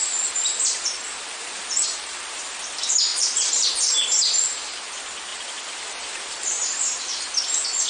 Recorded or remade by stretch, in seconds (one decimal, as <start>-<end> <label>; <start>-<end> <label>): 0.0-3.1 recorded; 3.1-3.9 remade; 3.9-5.3 recorded; 5.3-7.1 remade; 7.1-7.9 recorded